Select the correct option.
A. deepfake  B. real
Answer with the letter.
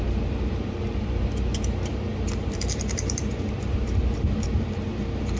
A